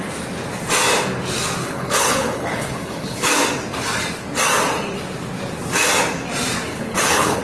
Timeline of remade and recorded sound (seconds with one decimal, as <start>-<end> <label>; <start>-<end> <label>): 0.0-1.6 recorded; 1.6-3.3 remade; 3.3-6.7 recorded; 6.7-7.4 remade